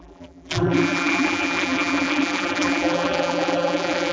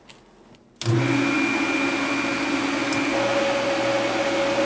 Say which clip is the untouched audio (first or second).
second